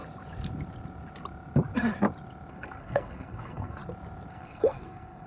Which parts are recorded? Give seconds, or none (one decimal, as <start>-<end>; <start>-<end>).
0.0-2.5; 3.8-4.3